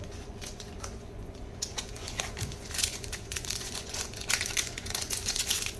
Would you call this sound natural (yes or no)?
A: no